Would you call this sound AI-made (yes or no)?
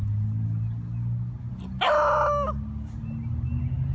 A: no